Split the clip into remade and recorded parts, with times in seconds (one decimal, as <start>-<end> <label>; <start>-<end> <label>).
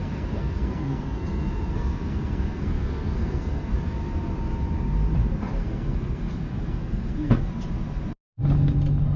0.0-3.7 remade; 3.7-5.6 recorded; 5.6-7.5 remade; 7.5-9.2 recorded